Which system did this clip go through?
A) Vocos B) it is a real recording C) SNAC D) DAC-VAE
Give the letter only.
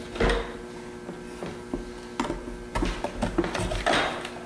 B